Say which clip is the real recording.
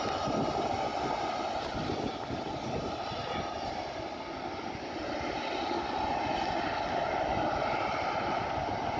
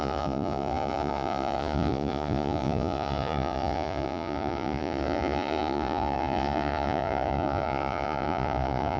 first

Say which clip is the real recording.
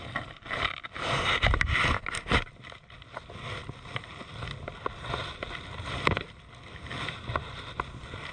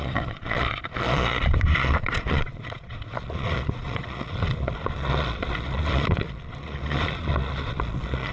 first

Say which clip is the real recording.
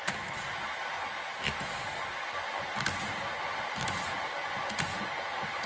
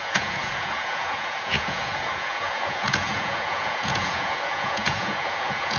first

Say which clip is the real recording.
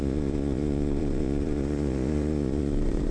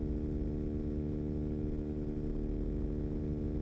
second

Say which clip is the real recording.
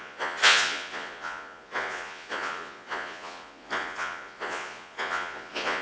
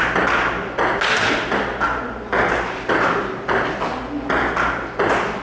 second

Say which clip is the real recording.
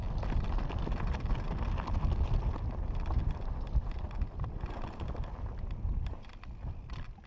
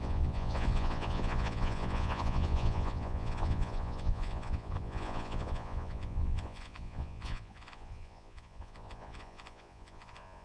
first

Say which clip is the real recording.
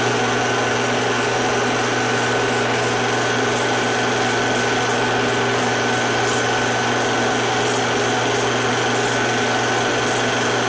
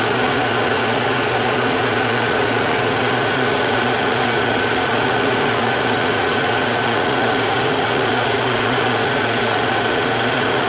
first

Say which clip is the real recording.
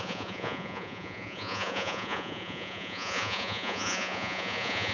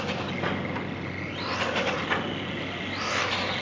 second